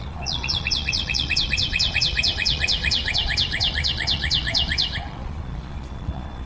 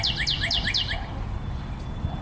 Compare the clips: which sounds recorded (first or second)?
second